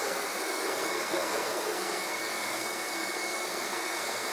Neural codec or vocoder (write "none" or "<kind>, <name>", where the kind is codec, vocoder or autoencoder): codec, SNAC